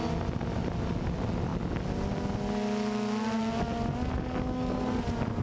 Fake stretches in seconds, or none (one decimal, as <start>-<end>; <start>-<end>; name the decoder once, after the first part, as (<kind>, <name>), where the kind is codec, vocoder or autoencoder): none